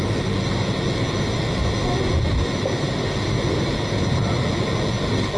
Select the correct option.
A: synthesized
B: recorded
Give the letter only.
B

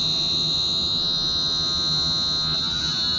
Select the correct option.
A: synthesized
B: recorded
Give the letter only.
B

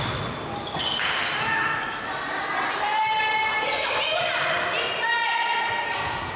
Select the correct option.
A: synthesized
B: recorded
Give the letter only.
B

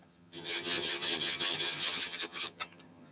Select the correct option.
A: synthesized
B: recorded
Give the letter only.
A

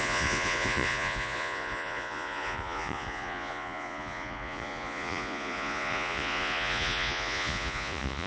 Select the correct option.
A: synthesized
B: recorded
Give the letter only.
A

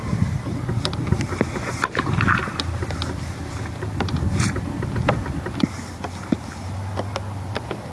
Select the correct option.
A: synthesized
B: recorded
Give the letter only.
B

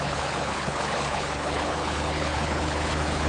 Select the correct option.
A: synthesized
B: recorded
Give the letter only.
A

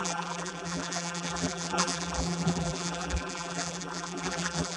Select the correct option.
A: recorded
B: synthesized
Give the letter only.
B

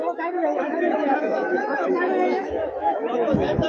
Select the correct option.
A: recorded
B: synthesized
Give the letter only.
B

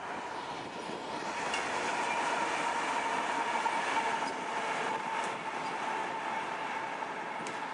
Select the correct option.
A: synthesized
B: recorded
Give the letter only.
B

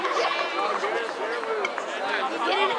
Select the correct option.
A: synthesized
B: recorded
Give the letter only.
B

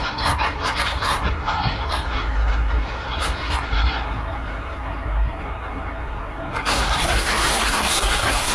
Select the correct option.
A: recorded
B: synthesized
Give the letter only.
B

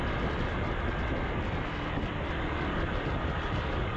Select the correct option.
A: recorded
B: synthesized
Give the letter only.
A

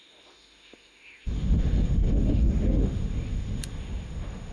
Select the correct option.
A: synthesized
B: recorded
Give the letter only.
A